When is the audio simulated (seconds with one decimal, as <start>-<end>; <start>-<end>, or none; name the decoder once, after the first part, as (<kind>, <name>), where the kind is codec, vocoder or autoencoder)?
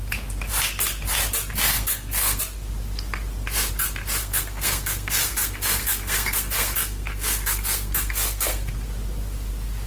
1.7-2.4 (codec, SNAC); 4.2-8.7